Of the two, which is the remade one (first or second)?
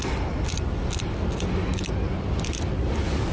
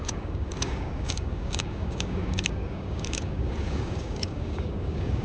second